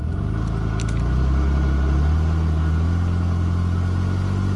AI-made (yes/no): no